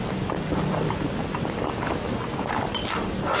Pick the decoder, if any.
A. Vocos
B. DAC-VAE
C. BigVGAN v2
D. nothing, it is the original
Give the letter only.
D